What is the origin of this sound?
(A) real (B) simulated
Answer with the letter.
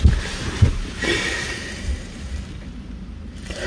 A